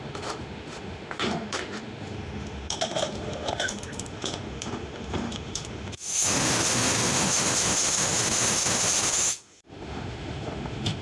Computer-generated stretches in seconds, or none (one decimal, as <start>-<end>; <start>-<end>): 0.0-11.0